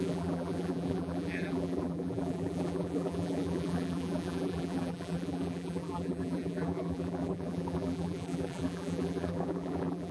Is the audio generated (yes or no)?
yes